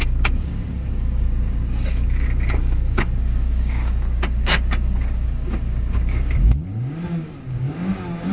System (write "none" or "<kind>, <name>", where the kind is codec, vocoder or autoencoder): codec, DAC